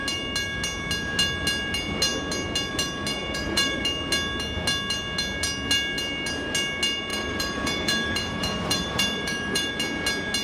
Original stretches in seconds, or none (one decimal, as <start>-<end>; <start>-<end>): 0.0-3.2; 3.8-7.1; 9.7-10.4